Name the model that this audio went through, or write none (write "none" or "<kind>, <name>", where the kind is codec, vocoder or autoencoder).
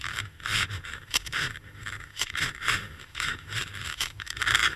autoencoder, DAC-VAE